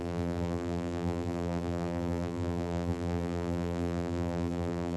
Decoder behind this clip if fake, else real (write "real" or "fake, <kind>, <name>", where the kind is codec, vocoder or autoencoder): fake, vocoder, BigVGAN v2